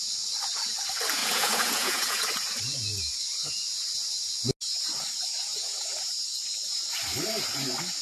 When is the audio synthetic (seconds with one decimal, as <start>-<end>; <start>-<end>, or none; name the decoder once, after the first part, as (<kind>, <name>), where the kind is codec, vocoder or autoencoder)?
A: 1.2-2.3 (vocoder, Vocos); 5.5-6.1